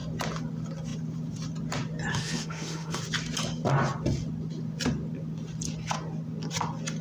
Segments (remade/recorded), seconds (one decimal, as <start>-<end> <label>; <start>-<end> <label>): 0.0-2.1 recorded; 2.1-3.0 remade; 3.0-7.0 recorded